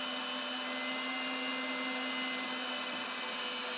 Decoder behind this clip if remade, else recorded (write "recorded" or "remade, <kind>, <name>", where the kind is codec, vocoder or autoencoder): recorded